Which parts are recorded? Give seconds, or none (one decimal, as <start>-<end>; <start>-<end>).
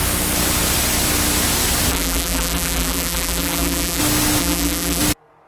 0.0-1.9; 4.0-4.4; 5.0-5.5